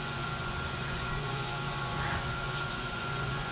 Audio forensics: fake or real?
fake